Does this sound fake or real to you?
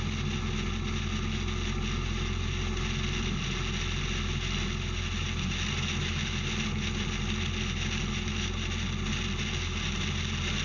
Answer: real